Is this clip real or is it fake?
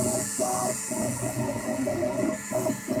fake